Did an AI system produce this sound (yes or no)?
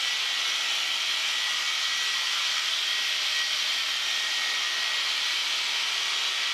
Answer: no